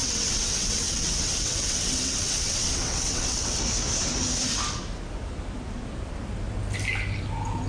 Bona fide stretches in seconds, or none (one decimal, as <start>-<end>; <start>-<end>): 3.6-7.7

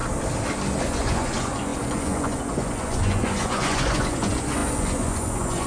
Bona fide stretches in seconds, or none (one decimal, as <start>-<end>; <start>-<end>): 0.0-0.8